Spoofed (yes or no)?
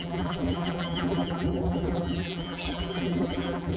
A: yes